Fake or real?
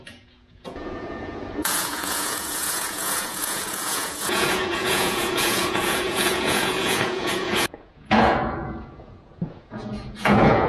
fake